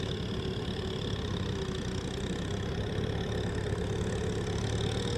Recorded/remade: recorded